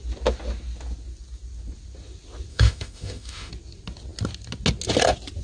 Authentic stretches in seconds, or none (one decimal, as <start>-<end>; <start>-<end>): 0.0-2.5; 3.5-5.4